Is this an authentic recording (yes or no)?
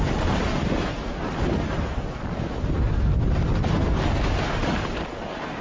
yes